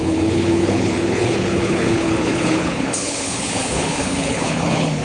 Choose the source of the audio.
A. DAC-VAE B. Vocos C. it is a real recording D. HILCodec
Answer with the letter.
D